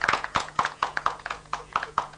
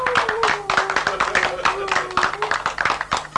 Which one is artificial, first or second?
first